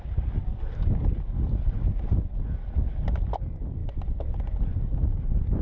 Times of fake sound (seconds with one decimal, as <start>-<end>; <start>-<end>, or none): none